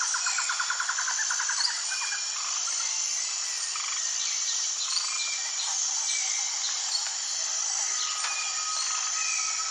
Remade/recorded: recorded